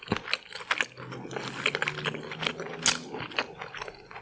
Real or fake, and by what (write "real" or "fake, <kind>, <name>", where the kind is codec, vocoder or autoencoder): real